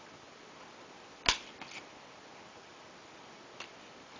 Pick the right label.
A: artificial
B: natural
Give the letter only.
B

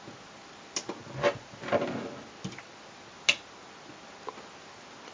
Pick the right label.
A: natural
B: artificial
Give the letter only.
A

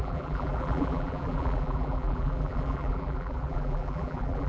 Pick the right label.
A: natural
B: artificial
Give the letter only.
B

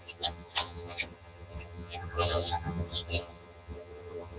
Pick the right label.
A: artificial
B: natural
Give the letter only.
A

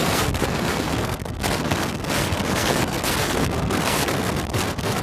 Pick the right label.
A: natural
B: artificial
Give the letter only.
B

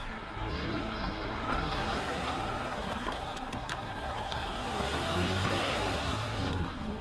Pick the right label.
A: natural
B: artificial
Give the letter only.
B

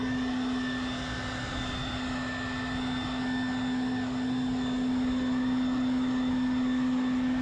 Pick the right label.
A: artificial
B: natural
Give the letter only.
B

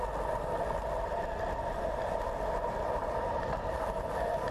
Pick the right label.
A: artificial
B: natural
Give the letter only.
B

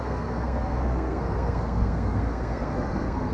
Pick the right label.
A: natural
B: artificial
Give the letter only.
B